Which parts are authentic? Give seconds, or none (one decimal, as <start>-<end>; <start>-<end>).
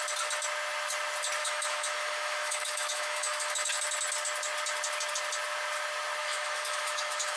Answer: 0.0-1.4; 3.7-6.2